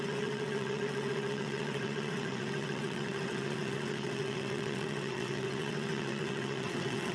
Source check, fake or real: fake